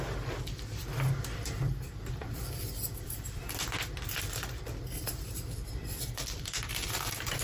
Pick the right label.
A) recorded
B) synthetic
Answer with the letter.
B